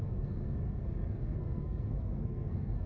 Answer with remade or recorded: remade